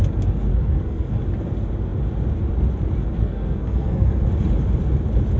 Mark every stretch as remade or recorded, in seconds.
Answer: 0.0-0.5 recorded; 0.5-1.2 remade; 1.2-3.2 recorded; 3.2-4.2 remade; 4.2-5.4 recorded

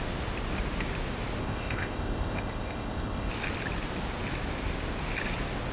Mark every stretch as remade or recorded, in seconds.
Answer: 0.0-1.4 recorded; 1.4-3.3 remade; 3.3-5.7 recorded

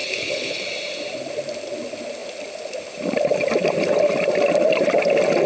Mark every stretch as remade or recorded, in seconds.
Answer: 0.0-0.6 remade; 0.6-5.5 recorded

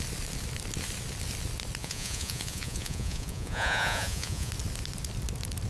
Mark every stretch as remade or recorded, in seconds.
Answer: 0.0-1.8 recorded; 1.8-4.5 remade; 4.5-5.7 recorded

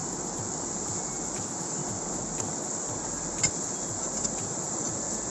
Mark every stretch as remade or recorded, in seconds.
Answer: 0.0-1.3 recorded; 1.3-1.8 remade; 1.8-5.3 recorded

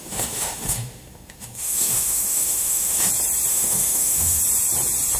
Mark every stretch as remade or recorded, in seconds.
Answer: 0.0-3.1 remade; 3.1-3.5 recorded; 3.5-4.4 remade; 4.4-5.2 recorded

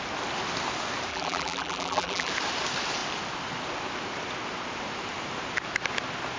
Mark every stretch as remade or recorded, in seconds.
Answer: 0.0-1.1 recorded; 1.1-2.3 remade; 2.3-6.4 recorded

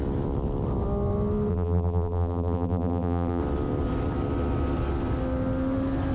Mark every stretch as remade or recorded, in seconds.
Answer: 0.0-1.5 recorded; 1.5-3.4 remade; 3.4-6.1 recorded